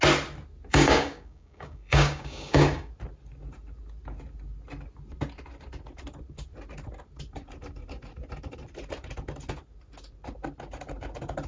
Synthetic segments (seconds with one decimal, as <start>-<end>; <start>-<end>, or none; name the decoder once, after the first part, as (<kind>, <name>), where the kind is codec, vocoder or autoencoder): 0.7-2.9 (codec, DAC)